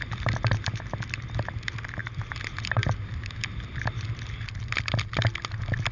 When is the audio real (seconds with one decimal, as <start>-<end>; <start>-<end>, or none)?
0.0-5.9

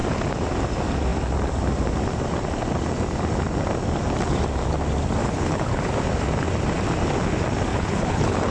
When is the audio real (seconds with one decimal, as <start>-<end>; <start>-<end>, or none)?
0.0-5.2; 5.9-7.7

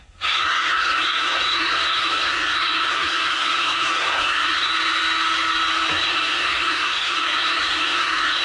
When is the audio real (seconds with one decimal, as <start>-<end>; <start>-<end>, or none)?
4.7-5.9

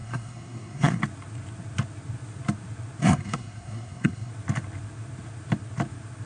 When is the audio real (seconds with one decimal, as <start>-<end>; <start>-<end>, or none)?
1.0-3.0; 4.3-6.3

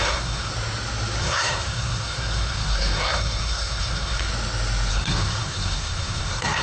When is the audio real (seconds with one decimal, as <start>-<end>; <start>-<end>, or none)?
0.5-1.2; 4.3-4.9

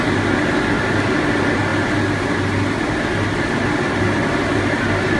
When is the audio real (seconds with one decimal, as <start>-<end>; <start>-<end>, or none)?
0.0-5.2

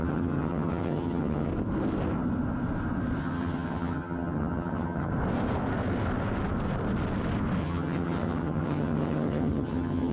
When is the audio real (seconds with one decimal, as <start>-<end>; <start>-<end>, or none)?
1.5-3.2; 5.1-7.6

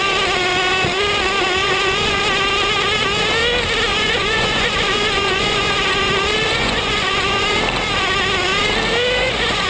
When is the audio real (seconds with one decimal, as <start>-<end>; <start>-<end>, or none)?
0.0-1.6; 2.2-3.9; 6.1-6.5; 7.5-9.2